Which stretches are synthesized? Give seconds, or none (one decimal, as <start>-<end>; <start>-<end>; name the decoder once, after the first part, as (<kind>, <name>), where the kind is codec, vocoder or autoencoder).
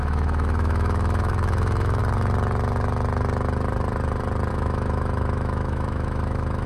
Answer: 0.0-2.0 (autoencoder, DAC-VAE); 4.5-6.7